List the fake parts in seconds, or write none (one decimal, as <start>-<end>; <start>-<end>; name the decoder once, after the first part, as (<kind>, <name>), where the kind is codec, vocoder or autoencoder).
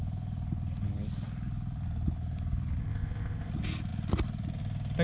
2.8-3.5 (codec, ZipCodec)